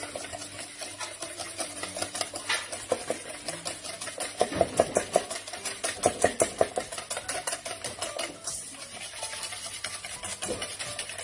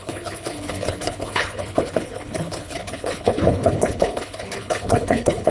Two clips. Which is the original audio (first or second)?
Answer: first